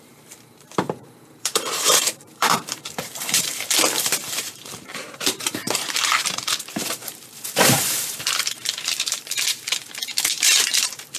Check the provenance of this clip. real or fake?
fake